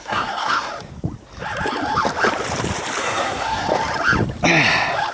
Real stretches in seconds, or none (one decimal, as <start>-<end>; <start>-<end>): 0.7-3.0; 3.7-5.1